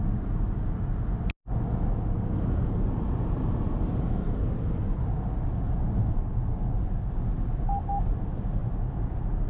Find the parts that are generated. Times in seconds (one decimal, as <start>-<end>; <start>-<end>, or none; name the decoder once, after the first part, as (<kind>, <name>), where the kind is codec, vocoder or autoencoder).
none